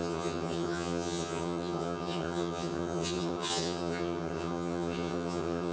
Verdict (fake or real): fake